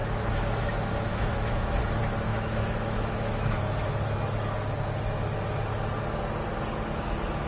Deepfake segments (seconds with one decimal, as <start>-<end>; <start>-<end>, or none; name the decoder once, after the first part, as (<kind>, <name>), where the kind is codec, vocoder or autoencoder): 1.1-1.8 (autoencoder, DAC-VAE); 2.3-3.6